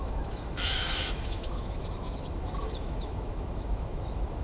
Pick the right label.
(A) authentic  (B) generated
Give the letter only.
B